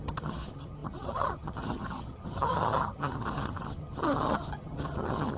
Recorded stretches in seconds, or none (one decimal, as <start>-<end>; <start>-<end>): none